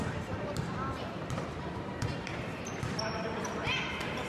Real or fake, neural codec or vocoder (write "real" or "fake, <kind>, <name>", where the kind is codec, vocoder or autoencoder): fake, vocoder, BigVGAN v2